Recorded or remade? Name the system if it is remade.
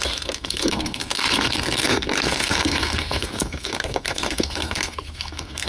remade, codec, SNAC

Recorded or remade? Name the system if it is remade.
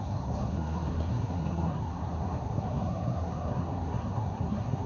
remade, codec, SNAC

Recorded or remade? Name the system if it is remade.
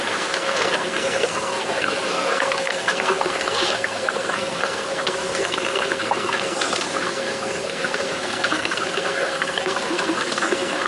remade, codec, SNAC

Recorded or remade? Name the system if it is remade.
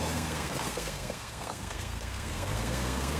remade, codec, SNAC